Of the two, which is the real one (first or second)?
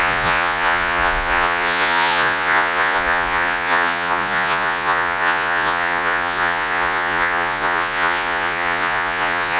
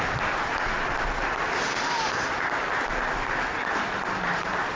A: second